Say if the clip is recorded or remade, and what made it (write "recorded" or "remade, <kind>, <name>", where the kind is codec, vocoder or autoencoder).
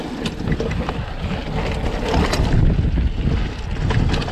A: recorded